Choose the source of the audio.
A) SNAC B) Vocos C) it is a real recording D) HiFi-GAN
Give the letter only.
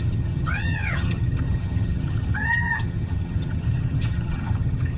D